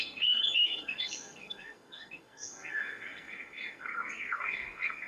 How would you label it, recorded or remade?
remade